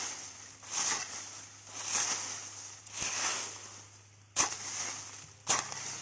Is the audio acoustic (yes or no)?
yes